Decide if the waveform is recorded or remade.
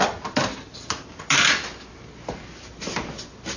recorded